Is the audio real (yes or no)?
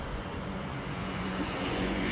no